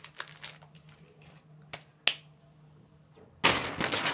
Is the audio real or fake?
real